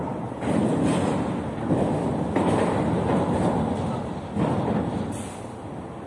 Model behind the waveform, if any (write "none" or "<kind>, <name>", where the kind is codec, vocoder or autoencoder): none